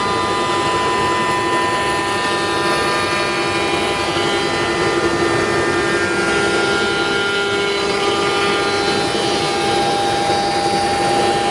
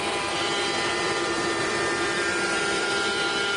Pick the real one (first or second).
first